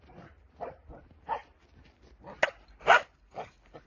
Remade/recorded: recorded